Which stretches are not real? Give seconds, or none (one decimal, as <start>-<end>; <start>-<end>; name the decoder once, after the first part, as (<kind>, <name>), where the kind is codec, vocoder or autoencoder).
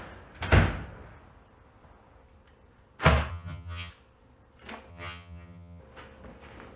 3.3-3.9 (vocoder, HiFi-GAN); 4.9-5.8